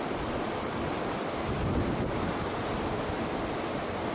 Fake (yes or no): no